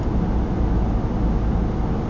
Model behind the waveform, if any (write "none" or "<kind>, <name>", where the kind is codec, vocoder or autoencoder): none